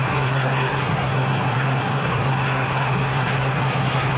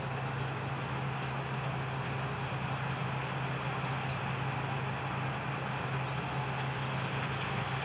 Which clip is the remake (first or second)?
first